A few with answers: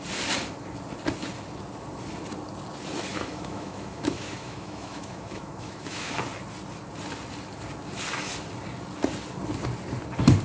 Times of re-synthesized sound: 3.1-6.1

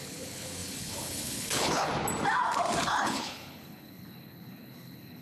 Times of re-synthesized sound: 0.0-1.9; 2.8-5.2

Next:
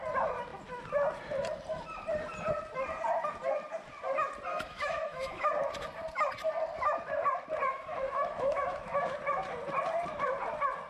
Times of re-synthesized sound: 4.5-5.5; 7.7-9.1